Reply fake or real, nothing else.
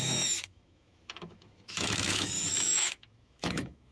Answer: fake